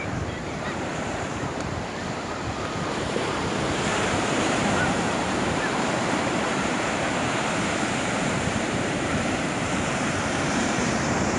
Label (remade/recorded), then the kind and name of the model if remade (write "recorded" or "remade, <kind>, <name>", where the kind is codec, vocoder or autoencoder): remade, vocoder, BigVGAN v2